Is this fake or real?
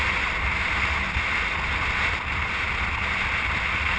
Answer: real